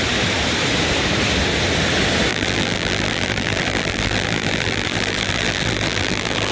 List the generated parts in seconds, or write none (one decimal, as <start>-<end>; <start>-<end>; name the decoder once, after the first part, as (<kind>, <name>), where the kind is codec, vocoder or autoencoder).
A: 2.3-6.5 (vocoder, BigVGAN v2)